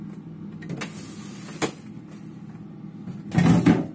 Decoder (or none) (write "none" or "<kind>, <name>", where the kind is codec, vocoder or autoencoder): none